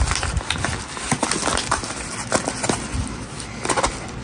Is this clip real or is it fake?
real